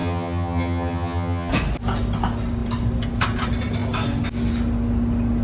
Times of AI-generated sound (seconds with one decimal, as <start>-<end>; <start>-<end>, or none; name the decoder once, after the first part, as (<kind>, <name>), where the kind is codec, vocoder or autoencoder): 0.0-1.5 (vocoder, HiFi-GAN)